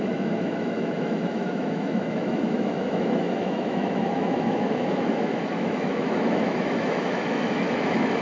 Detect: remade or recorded remade